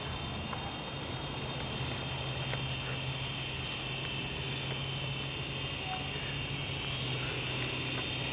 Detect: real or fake real